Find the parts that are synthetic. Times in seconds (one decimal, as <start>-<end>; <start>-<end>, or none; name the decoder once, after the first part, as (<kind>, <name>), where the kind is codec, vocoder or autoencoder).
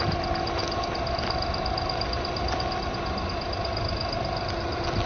none